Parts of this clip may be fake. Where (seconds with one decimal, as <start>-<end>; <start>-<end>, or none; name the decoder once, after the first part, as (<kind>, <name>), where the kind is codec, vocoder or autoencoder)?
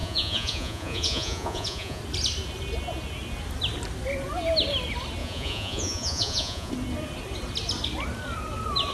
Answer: 0.0-2.0 (vocoder, Vocos); 5.2-6.7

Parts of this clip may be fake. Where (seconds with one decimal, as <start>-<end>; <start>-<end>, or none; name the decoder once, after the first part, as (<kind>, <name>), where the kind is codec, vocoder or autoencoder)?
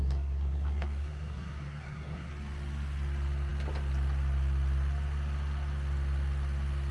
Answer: 0.0-2.3 (codec, SNAC)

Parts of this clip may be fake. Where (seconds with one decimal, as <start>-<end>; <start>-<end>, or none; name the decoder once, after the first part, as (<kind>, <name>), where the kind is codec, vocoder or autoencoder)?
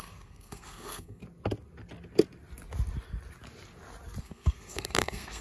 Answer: 0.0-1.2 (codec, SNAC); 4.2-5.4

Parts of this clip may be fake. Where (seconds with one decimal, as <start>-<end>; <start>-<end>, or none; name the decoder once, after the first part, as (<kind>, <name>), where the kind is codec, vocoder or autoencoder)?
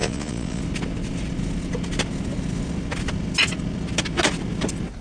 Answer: 0.0-0.6 (vocoder, Vocos)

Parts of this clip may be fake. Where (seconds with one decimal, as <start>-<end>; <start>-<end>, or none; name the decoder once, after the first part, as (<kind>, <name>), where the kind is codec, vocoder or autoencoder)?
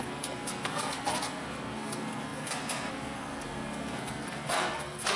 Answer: 0.0-5.2 (codec, SNAC)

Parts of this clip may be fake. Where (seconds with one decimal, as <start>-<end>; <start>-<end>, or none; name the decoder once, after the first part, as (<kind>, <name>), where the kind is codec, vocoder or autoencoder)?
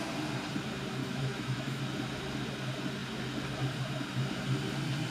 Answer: 1.0-1.8 (autoencoder, DAC-VAE)